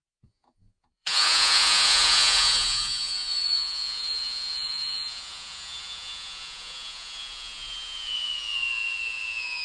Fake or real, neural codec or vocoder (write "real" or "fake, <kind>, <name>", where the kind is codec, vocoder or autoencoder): fake, vocoder, Vocos